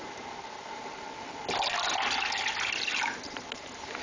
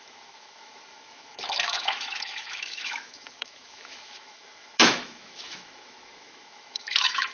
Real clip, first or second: first